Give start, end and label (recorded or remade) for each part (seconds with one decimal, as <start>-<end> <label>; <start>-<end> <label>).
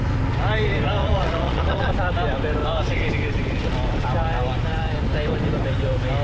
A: 0.0-1.0 recorded; 1.0-1.9 remade; 1.9-6.2 recorded